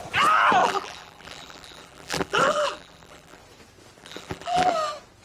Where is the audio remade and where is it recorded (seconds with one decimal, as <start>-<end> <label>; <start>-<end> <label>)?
0.0-0.6 recorded; 0.6-3.4 remade; 3.4-4.0 recorded; 4.0-4.7 remade; 4.7-5.2 recorded

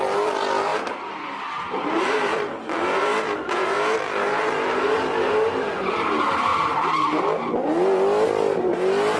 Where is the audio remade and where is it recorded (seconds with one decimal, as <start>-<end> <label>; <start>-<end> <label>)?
0.0-0.7 recorded; 0.7-4.0 remade; 4.0-9.2 recorded

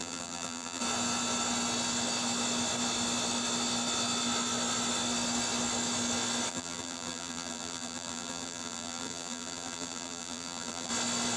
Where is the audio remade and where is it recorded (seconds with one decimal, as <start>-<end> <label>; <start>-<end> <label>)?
0.0-0.8 remade; 0.8-6.5 recorded; 6.5-10.9 remade; 10.9-11.4 recorded

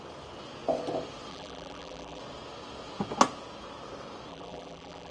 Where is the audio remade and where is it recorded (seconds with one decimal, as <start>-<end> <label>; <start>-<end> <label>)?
0.0-1.3 recorded; 1.3-2.2 remade; 2.2-4.3 recorded; 4.3-5.1 remade

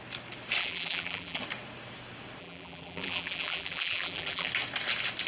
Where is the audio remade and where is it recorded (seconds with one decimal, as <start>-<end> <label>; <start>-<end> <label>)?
0.0-0.6 recorded; 0.6-1.4 remade; 1.4-2.4 recorded; 2.4-4.5 remade; 4.5-5.3 recorded

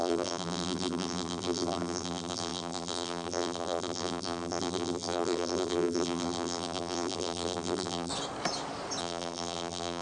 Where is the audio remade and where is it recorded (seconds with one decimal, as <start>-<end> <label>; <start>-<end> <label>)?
0.0-8.1 remade; 8.1-9.0 recorded; 9.0-10.0 remade

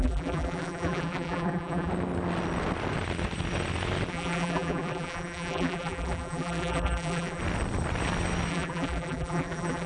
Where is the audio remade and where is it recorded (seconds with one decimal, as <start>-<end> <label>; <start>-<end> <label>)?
0.0-1.9 remade; 1.9-4.1 recorded; 4.1-7.4 remade; 7.4-8.5 recorded; 8.5-9.9 remade

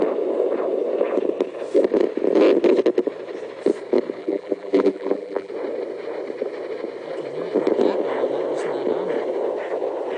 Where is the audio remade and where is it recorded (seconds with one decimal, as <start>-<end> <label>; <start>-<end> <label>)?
0.0-4.2 recorded; 4.2-5.5 remade; 5.5-10.2 recorded